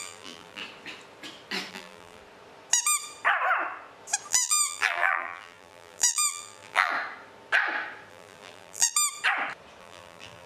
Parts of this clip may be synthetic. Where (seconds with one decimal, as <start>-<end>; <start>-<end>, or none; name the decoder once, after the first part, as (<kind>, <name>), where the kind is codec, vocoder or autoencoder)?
0.0-0.6 (vocoder, BigVGAN v2); 1.7-2.2; 4.3-6.9; 8.1-8.9; 9.8-10.5